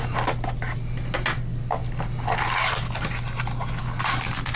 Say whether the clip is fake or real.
real